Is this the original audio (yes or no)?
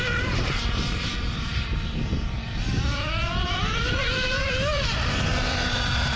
no